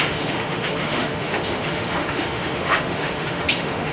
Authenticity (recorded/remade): remade